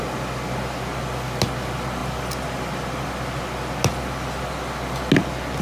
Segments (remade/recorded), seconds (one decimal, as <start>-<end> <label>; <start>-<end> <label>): 0.0-5.6 recorded